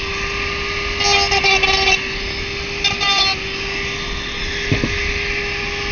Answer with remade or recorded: recorded